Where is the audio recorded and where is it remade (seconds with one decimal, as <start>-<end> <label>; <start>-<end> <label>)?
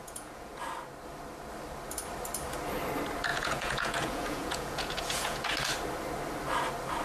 0.0-0.6 remade; 0.6-3.3 recorded; 3.3-5.5 remade; 5.5-7.0 recorded